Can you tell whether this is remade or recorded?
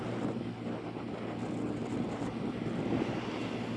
recorded